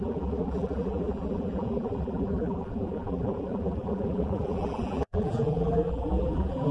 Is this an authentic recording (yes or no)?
no